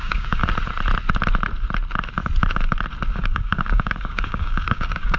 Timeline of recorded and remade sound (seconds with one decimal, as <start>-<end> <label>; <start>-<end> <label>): 0.0-0.4 remade; 0.4-3.1 recorded; 3.1-5.2 remade